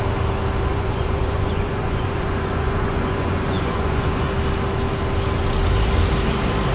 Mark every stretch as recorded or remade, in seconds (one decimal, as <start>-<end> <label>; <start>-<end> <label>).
0.0-0.7 recorded; 0.7-4.2 remade; 4.2-6.7 recorded